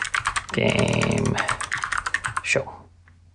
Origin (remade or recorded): recorded